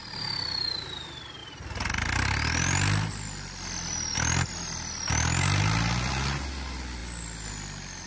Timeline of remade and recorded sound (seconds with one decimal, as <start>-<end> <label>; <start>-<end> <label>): 0.0-8.1 recorded